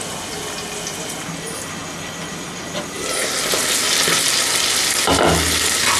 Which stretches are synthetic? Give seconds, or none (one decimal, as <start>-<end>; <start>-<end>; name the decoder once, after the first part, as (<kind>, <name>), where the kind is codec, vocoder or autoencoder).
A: none